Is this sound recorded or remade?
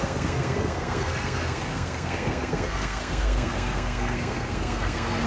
remade